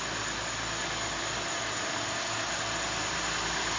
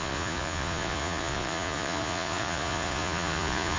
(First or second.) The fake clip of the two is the second